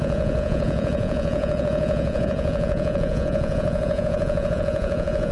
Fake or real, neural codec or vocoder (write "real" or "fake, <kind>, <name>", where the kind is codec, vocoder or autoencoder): fake, vocoder, Vocos